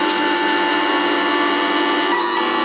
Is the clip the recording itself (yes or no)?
yes